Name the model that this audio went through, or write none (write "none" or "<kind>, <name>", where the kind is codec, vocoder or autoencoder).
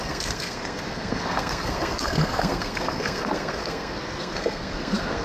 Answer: codec, SNAC